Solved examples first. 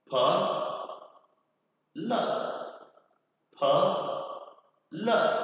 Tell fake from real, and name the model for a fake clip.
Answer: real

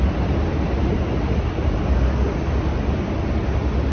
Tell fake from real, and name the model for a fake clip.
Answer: real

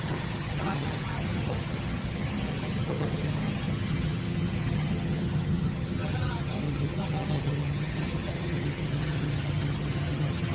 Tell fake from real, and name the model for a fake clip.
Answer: fake, vocoder, HiFi-GAN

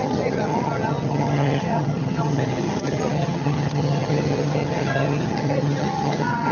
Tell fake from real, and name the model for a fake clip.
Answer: fake, vocoder, HiFi-GAN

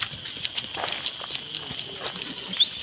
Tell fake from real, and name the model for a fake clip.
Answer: real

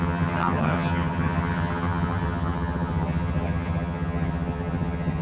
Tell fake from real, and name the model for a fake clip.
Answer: fake, vocoder, HiFi-GAN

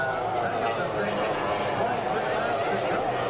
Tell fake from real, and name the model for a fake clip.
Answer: real